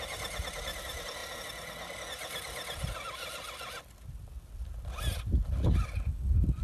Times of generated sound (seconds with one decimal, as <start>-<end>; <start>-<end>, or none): none